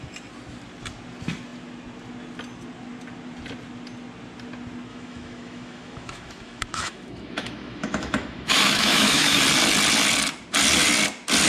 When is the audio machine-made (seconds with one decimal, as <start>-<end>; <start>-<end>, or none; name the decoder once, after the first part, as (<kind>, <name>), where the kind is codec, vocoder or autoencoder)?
4.9-9.4 (autoencoder, DAC-VAE)